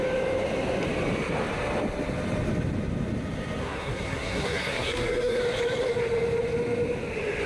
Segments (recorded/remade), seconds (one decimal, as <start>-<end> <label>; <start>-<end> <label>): 0.0-3.6 recorded; 3.6-5.4 remade; 5.4-7.5 recorded